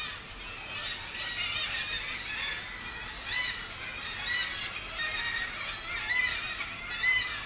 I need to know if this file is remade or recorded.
recorded